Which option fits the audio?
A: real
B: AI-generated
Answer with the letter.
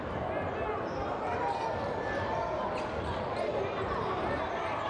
A